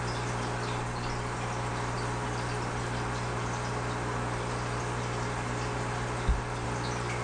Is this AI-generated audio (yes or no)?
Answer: no